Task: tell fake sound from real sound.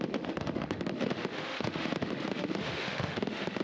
fake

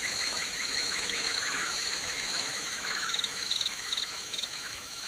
fake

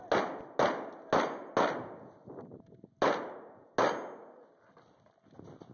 real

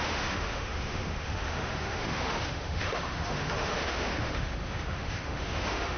fake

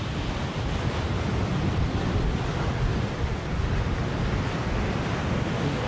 real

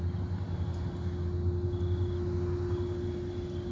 real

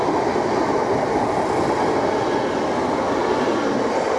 real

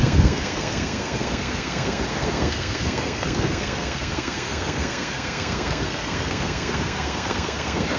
fake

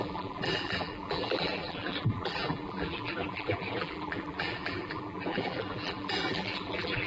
fake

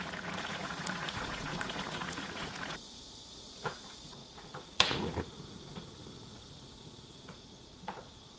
fake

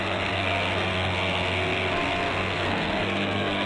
fake